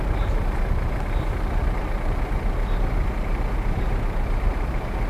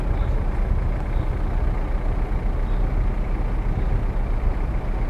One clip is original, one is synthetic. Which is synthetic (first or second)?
first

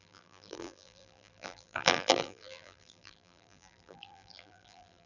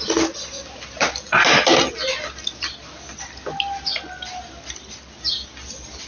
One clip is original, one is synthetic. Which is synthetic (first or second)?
first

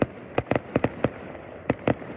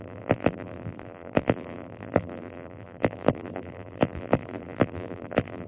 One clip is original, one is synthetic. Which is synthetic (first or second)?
second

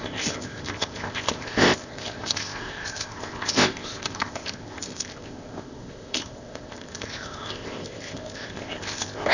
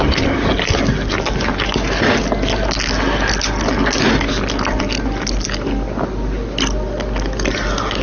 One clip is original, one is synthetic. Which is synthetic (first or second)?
first